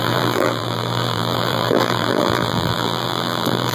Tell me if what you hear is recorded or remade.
remade